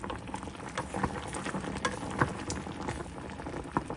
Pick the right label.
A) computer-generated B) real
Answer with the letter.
B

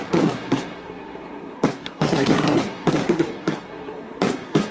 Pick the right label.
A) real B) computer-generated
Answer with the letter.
B